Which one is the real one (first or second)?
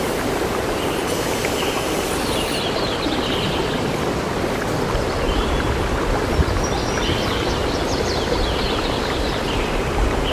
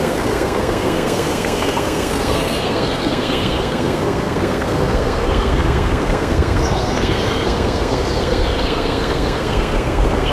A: first